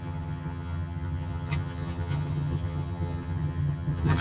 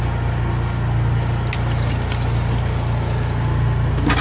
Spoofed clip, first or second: first